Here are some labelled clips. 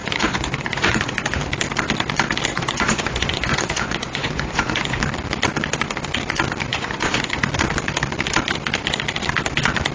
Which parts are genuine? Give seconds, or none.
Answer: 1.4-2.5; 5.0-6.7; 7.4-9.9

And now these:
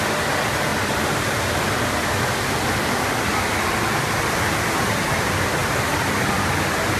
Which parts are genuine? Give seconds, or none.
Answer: 0.0-5.6; 6.5-7.0

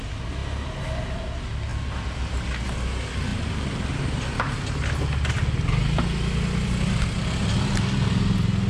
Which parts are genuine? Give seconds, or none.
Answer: 0.0-8.7

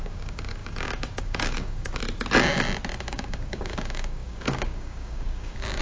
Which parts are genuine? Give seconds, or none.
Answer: 2.0-3.0

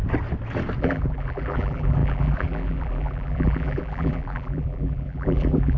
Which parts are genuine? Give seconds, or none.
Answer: 0.0-0.8

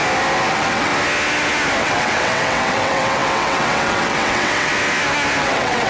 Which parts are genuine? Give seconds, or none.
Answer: 0.0-0.5; 0.9-1.8; 4.7-5.4

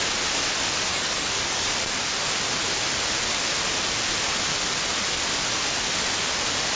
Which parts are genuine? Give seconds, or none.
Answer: 0.0-0.9; 1.8-6.8